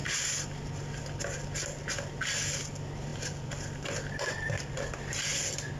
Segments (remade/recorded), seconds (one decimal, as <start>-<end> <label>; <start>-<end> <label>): 0.0-5.8 recorded